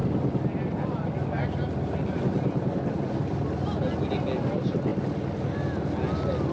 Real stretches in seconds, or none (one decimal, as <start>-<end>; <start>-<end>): 0.0-6.5